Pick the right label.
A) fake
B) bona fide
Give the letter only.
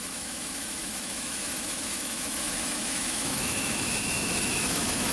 A